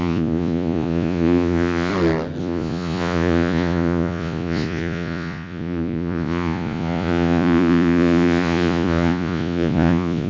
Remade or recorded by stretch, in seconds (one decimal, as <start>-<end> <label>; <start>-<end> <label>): 0.0-1.9 remade; 1.9-2.4 recorded; 2.4-10.3 remade